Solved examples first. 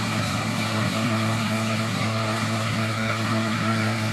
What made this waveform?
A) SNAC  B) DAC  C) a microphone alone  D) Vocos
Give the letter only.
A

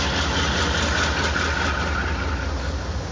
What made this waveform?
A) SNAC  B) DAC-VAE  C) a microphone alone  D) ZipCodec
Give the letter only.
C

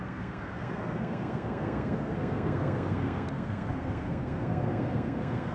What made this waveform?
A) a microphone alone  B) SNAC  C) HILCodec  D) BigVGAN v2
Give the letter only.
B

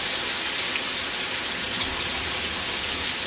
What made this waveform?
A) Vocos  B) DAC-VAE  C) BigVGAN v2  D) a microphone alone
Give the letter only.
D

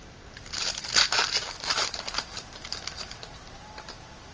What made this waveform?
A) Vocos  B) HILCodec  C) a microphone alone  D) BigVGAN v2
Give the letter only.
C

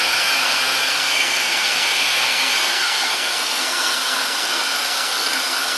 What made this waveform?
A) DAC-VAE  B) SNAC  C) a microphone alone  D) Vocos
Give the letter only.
B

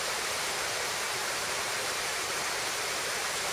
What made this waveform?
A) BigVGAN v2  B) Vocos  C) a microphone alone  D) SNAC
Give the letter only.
A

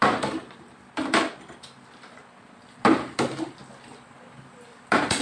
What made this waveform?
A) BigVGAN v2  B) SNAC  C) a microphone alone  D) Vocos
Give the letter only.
C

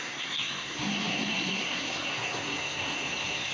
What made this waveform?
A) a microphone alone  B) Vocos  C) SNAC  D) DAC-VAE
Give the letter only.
C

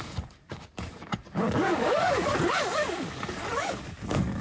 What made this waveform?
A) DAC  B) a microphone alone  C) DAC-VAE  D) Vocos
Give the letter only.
A